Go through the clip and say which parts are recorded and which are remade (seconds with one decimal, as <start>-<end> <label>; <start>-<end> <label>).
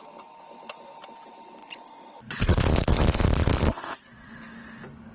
0.0-1.6 recorded; 1.6-4.3 remade; 4.3-5.1 recorded